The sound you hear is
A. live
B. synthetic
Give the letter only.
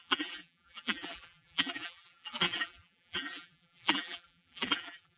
B